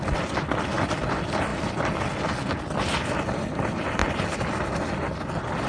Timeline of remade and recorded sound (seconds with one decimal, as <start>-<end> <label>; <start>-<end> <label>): 0.0-5.7 recorded